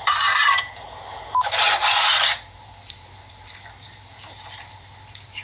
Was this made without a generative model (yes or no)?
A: no